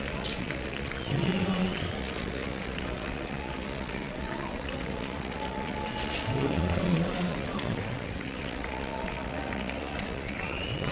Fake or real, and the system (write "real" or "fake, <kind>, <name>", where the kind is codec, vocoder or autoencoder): fake, vocoder, WaveNeXt